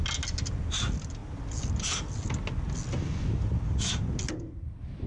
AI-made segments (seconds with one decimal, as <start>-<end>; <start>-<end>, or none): none